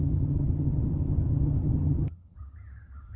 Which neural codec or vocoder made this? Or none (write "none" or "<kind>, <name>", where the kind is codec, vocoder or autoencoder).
vocoder, HiFi-GAN